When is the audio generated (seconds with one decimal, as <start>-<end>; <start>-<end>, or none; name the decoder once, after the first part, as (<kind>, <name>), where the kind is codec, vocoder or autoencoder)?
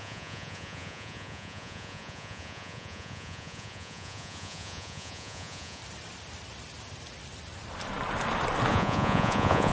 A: 0.0-5.8 (vocoder, Vocos); 8.7-9.7